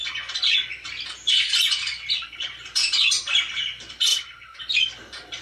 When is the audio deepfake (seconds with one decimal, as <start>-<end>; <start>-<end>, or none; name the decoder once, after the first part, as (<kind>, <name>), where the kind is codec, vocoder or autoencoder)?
4.1-4.6 (vocoder, BigVGAN v2)